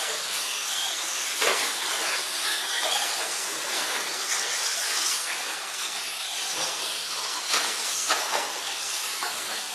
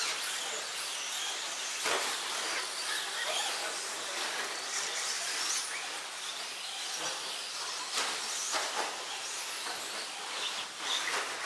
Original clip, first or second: second